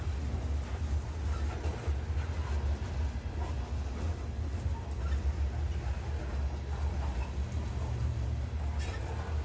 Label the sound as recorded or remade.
recorded